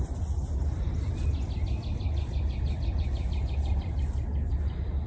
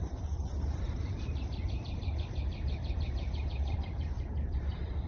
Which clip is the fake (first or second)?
second